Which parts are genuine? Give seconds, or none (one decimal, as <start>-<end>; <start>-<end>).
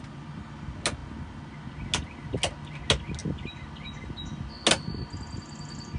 0.0-6.0